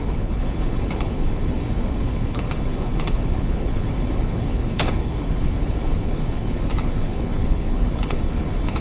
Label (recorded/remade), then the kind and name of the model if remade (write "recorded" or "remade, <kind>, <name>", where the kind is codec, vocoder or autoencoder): remade, codec, HILCodec